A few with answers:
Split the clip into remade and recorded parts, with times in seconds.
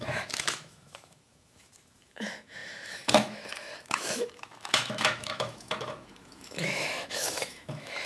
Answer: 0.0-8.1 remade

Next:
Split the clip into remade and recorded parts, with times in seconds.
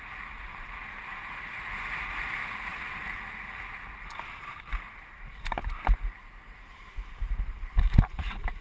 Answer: 0.0-8.6 recorded